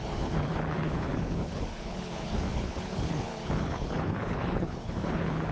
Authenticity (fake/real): fake